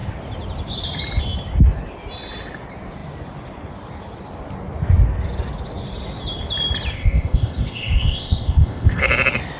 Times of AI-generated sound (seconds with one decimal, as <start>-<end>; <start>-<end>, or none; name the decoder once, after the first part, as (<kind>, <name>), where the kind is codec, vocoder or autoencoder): 6.9-9.0 (codec, ZipCodec)

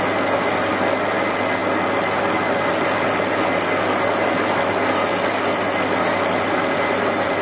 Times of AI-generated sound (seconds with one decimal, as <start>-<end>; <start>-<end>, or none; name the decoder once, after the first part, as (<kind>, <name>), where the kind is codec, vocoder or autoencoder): none

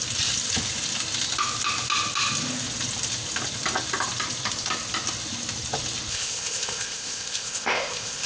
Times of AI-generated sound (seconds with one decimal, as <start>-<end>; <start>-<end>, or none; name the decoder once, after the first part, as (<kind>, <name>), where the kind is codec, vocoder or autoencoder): 6.1-8.3 (codec, ZipCodec)

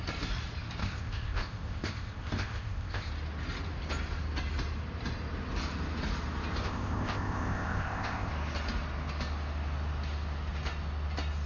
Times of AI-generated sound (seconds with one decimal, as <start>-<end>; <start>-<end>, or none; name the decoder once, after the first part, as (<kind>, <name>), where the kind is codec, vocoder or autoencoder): 0.8-3.1 (codec, ZipCodec); 6.6-8.3

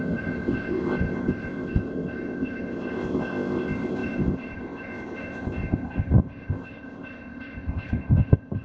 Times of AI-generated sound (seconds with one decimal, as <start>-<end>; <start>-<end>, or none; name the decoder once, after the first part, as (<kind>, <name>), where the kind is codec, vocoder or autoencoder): 0.0-8.6 (codec, ZipCodec)

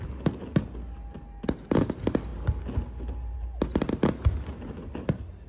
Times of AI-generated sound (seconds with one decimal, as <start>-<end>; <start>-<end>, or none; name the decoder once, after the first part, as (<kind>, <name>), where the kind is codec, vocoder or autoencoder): none